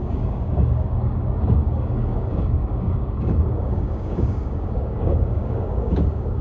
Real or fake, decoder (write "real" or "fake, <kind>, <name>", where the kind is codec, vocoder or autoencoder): fake, codec, DAC